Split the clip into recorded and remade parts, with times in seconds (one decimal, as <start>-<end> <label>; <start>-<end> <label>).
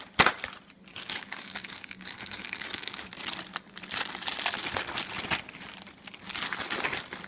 0.0-0.9 recorded; 0.9-3.1 remade; 3.1-7.3 recorded